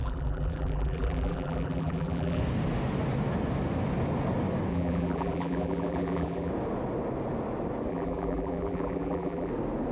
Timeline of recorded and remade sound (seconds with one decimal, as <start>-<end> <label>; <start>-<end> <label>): 0.0-2.4 remade; 2.4-4.7 recorded; 4.7-6.5 remade; 6.5-7.9 recorded; 7.9-9.5 remade; 9.5-9.9 recorded